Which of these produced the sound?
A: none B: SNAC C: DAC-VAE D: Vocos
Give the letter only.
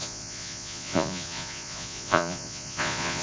D